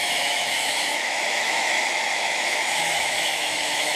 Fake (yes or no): yes